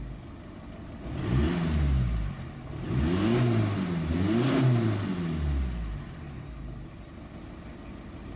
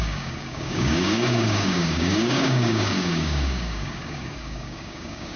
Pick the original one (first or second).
first